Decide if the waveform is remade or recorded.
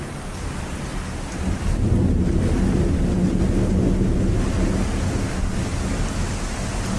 recorded